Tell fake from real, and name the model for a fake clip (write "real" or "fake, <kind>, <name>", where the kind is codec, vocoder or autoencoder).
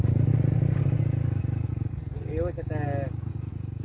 real